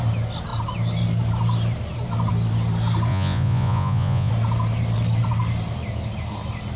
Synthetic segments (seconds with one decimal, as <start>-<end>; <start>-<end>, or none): 3.1-4.3